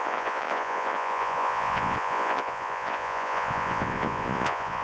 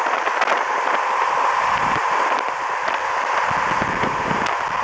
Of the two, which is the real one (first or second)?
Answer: second